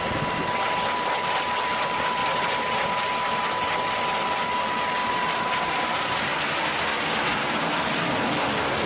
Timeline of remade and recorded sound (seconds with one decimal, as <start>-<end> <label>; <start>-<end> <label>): 0.0-2.2 recorded; 2.2-2.9 remade; 2.9-5.0 recorded; 5.0-5.7 remade; 5.7-8.9 recorded